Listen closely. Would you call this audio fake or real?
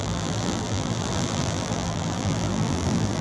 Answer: fake